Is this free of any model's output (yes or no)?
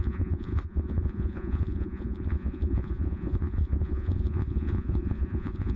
no